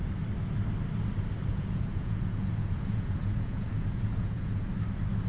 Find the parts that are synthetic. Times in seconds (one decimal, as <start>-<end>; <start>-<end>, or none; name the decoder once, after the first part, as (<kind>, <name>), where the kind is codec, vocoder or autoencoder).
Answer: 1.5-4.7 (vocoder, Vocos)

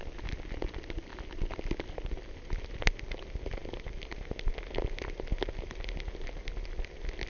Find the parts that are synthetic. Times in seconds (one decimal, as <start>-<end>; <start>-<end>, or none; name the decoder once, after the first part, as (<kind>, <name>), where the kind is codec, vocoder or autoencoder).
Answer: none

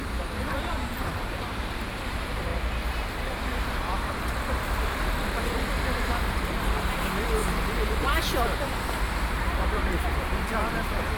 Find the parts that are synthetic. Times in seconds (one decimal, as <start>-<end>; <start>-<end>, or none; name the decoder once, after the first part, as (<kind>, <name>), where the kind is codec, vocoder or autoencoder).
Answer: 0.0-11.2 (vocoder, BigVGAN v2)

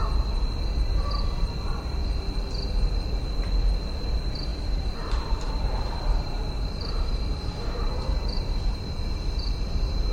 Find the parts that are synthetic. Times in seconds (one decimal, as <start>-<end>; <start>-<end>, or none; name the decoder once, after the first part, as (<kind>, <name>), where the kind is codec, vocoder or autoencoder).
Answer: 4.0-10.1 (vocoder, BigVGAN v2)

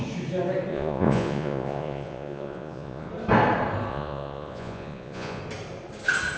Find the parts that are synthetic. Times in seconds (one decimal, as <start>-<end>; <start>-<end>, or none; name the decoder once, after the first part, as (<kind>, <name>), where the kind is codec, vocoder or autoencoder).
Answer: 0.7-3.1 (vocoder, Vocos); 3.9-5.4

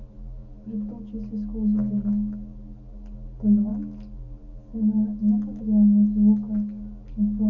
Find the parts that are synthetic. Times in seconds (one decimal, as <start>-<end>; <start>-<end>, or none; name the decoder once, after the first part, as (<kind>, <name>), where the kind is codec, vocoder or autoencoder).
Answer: none